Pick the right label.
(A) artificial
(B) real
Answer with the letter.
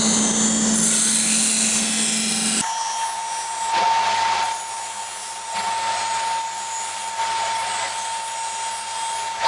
B